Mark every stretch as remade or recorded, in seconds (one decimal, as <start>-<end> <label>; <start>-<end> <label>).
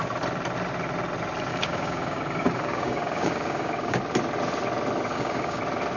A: 0.0-1.5 recorded; 1.5-4.0 remade; 4.0-5.1 recorded; 5.1-5.6 remade; 5.6-6.0 recorded